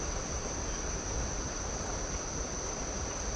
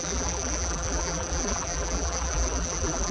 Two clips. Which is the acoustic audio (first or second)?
first